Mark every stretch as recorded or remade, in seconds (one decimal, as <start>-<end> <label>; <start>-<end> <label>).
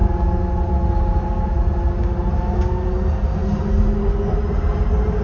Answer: 0.0-5.2 recorded